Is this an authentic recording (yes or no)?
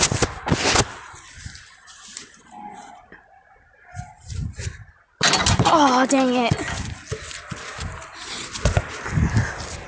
yes